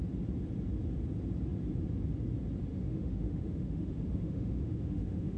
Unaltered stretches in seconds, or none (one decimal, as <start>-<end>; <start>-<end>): 0.0-2.7